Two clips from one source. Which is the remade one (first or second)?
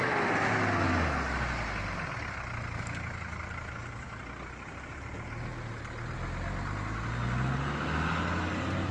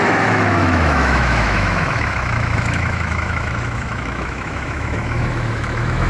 second